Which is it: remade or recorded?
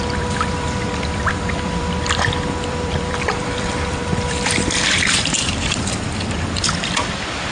remade